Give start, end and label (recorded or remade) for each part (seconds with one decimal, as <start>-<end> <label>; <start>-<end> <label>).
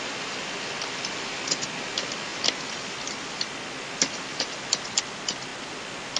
0.0-6.2 recorded